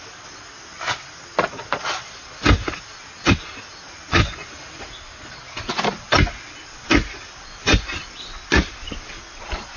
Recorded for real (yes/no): yes